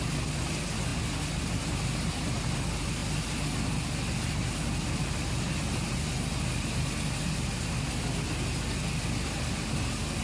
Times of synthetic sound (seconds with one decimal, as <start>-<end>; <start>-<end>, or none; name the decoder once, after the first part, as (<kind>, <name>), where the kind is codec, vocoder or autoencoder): none